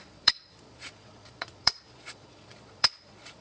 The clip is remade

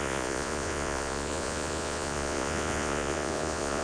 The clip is remade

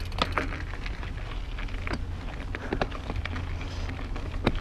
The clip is recorded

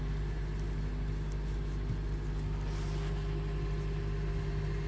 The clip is recorded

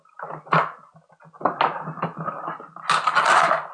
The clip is recorded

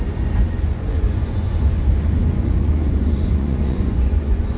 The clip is remade